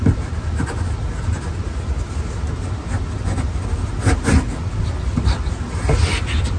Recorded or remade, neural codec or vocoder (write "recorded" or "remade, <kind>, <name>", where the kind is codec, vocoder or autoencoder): recorded